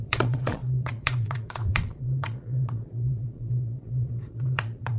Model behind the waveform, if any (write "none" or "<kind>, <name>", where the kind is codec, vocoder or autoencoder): vocoder, Vocos